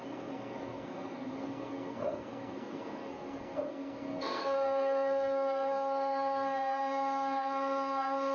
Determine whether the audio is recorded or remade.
remade